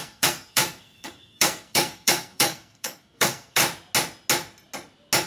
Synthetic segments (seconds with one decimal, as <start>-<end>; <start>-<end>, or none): 0.0-3.6